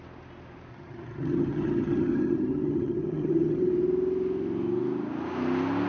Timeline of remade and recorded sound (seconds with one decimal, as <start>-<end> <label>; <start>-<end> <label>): 0.0-0.7 recorded; 0.7-3.7 remade; 3.7-5.9 recorded